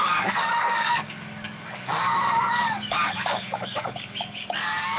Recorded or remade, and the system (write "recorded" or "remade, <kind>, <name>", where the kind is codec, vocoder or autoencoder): remade, codec, DAC